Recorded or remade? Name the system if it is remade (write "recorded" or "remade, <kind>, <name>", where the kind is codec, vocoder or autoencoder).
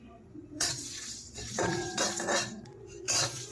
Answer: remade, vocoder, Vocos